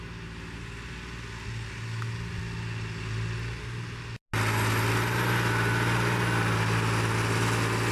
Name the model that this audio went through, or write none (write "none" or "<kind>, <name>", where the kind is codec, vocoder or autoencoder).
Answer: none